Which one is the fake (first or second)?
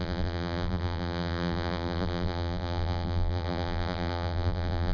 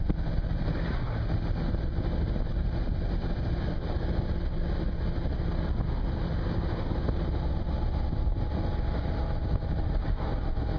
first